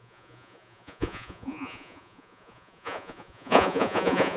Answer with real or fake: fake